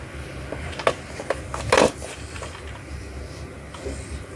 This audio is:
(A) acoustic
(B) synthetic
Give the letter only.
A